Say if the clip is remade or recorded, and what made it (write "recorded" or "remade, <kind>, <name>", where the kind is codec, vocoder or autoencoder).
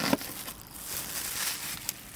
recorded